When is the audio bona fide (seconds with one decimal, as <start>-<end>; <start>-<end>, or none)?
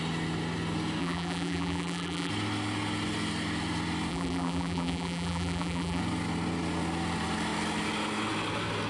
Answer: 0.0-1.0; 2.3-4.1; 6.0-8.9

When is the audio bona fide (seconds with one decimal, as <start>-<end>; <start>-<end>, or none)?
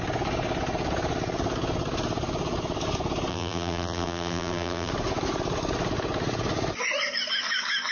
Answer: 0.0-3.3; 4.9-7.9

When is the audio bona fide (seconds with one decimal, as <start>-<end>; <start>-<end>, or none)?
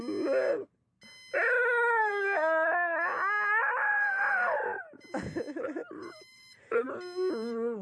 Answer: 0.0-3.6; 4.8-5.8; 6.9-7.8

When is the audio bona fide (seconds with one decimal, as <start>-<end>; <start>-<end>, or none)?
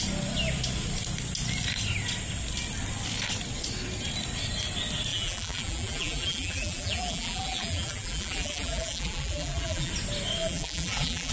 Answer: 0.0-5.1; 9.9-10.4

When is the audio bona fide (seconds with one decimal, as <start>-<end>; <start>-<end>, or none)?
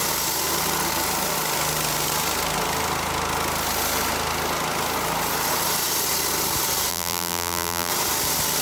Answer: 0.0-6.9; 7.9-8.6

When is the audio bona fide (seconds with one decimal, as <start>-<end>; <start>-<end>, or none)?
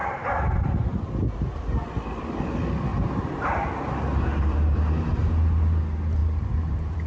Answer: 1.0-2.9; 3.4-6.2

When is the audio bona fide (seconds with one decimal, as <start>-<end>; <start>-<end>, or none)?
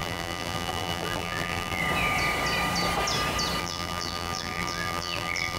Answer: 1.8-3.6